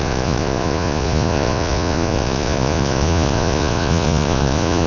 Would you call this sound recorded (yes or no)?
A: no